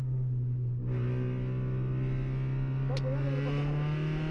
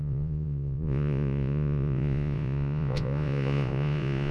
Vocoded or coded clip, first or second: second